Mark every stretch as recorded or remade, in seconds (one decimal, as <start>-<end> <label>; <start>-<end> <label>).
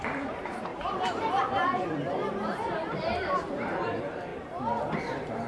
0.0-4.3 remade; 4.3-4.9 recorded; 4.9-5.5 remade